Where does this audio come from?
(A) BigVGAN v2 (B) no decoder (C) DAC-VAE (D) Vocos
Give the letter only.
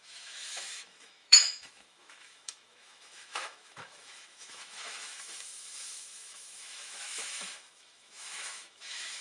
C